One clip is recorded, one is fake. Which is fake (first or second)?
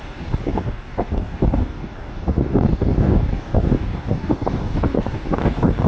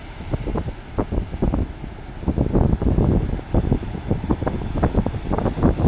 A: first